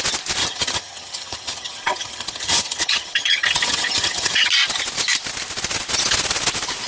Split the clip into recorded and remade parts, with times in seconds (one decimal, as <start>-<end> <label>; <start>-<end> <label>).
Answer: 0.0-0.4 recorded; 0.4-4.5 remade; 4.5-6.9 recorded